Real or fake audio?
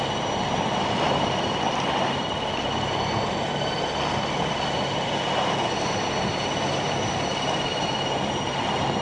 real